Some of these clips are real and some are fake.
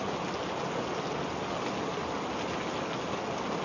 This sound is real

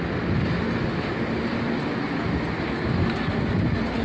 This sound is real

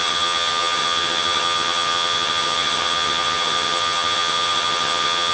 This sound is fake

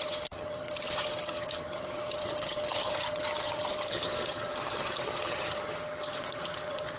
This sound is fake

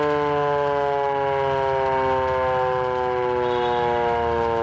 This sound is real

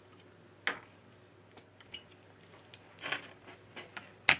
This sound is real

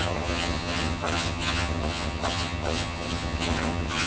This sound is fake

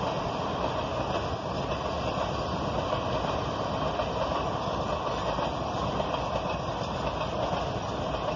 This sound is real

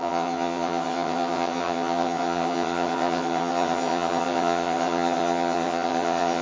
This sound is fake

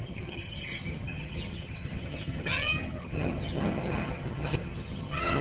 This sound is fake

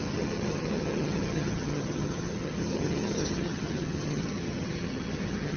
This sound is fake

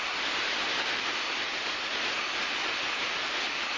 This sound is real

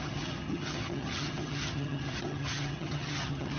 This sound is fake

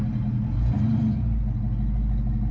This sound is real